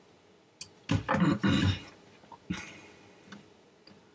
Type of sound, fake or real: real